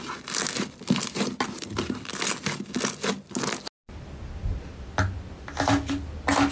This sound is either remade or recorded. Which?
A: recorded